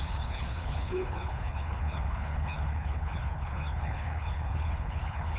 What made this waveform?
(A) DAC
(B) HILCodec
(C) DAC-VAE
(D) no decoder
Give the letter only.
B